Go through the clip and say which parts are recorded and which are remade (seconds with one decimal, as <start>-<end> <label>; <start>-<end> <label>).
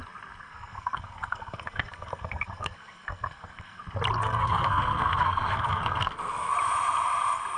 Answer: 0.0-0.4 recorded; 0.4-3.8 remade; 3.8-4.2 recorded; 4.2-6.5 remade; 6.5-7.6 recorded